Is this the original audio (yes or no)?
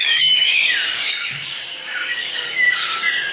no